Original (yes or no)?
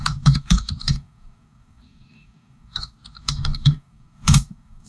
no